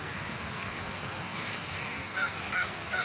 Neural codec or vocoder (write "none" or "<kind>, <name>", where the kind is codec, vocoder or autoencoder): codec, SNAC